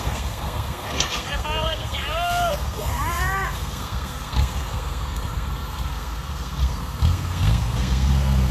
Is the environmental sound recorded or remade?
remade